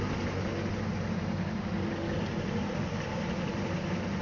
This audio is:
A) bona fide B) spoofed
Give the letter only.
A